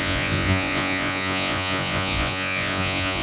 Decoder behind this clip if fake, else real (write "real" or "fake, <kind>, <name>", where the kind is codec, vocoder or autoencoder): fake, vocoder, Vocos